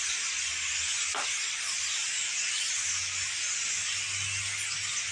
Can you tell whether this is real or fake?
real